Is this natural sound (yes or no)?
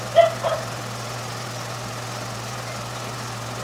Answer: yes